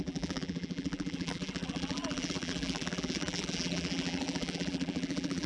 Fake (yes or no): yes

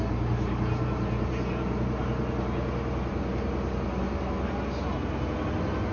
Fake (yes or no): no